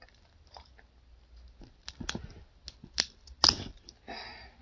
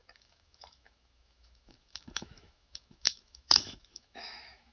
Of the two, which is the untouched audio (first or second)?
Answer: first